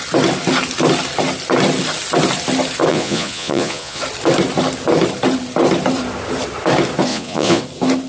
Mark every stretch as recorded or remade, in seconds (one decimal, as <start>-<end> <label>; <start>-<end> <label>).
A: 0.0-2.9 recorded; 2.9-4.0 remade; 4.0-7.1 recorded; 7.1-7.6 remade; 7.6-8.1 recorded